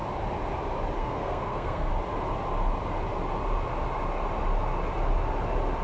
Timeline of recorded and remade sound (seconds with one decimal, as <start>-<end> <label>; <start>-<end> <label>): 0.0-1.0 recorded; 1.0-1.9 remade; 1.9-5.8 recorded